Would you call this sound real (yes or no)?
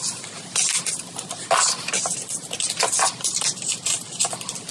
yes